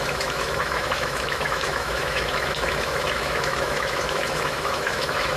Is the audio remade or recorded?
remade